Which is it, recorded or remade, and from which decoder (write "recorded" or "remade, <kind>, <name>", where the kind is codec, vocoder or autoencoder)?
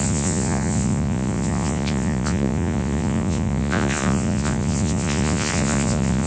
remade, vocoder, Vocos